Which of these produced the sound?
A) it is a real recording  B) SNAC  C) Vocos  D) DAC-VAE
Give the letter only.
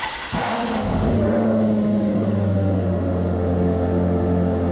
D